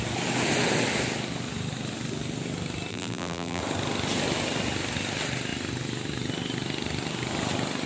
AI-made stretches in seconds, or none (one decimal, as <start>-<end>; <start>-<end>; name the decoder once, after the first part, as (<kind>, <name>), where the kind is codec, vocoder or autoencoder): 2.9-3.6 (vocoder, BigVGAN v2)